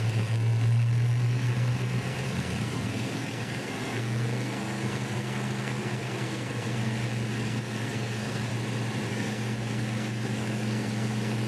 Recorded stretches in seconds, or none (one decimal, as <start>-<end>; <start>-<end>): 8.5-9.1